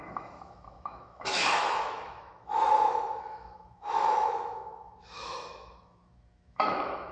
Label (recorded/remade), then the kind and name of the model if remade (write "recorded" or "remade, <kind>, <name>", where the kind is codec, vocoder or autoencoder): remade, autoencoder, DAC-VAE